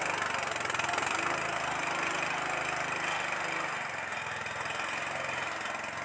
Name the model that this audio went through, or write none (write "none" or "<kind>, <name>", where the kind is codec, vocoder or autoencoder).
none